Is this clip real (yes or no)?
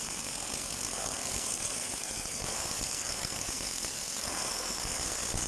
no